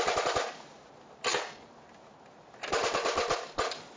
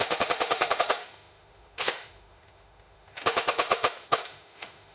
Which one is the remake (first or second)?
second